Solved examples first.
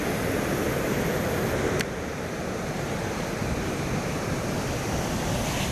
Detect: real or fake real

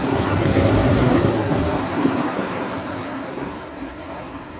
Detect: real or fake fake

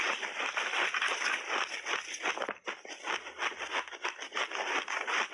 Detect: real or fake real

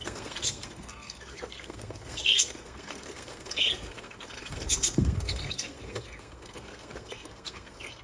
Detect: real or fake fake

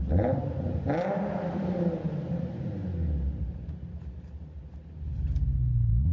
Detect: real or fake real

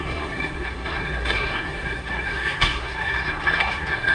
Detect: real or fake fake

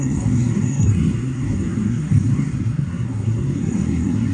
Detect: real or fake fake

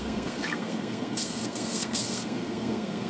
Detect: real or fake fake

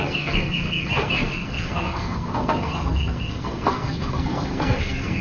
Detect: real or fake fake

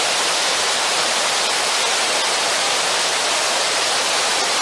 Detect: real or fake real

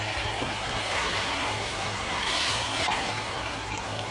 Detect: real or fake fake